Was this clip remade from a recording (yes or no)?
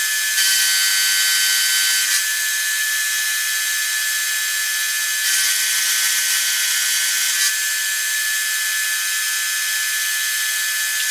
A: no